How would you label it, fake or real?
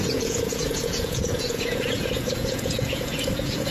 fake